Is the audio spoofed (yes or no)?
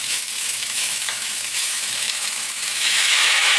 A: yes